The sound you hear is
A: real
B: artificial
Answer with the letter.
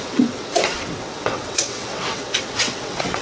B